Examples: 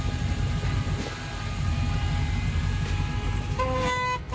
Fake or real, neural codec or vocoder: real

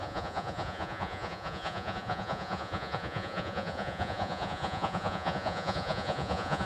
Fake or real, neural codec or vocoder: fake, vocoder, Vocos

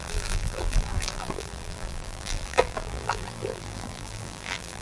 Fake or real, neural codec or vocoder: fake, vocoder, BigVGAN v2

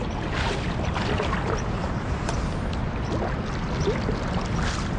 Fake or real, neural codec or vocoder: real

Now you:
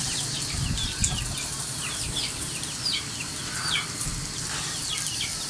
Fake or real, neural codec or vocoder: real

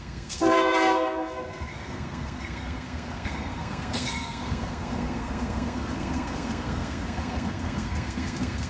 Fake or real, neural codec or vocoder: fake, codec, SNAC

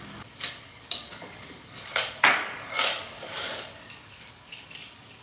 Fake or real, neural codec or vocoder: fake, codec, DAC